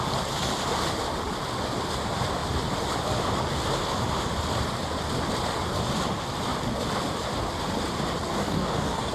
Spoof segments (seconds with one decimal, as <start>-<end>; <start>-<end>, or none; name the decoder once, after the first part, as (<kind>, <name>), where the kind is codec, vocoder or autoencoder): 8.3-9.1 (codec, DAC)